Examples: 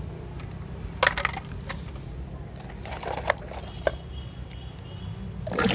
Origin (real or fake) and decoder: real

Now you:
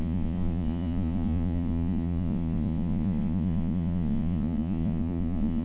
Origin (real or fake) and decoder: fake, vocoder, Vocos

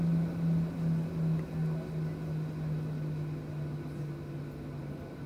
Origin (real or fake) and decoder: real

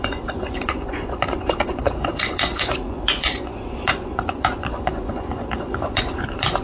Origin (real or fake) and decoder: fake, vocoder, Vocos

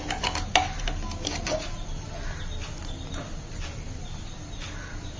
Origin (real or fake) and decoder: real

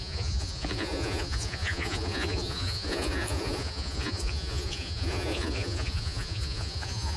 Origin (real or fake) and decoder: fake, vocoder, Vocos